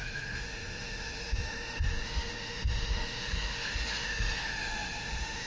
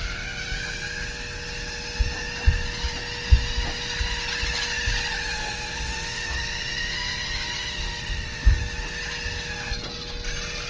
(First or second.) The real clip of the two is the second